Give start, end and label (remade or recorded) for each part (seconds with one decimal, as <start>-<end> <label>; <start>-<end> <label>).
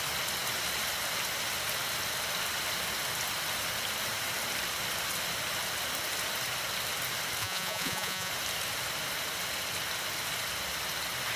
0.0-7.4 recorded; 7.4-8.3 remade; 8.3-11.4 recorded